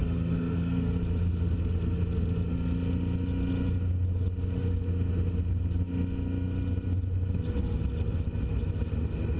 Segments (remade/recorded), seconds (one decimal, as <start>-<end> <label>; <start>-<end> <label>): 0.0-1.0 remade; 1.0-9.4 recorded